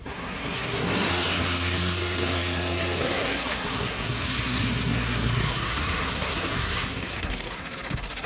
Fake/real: fake